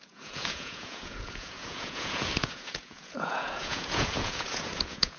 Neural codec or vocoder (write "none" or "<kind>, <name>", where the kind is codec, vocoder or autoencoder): vocoder, Vocos